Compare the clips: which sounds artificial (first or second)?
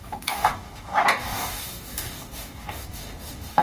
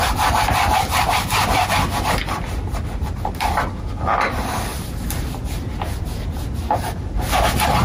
first